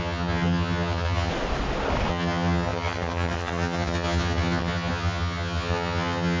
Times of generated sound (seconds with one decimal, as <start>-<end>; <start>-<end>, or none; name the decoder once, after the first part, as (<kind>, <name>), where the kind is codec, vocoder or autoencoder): 0.0-1.3 (vocoder, HiFi-GAN); 2.1-6.4